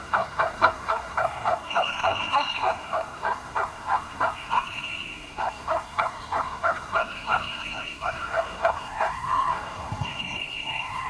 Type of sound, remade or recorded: remade